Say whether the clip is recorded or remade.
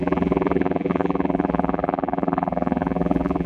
remade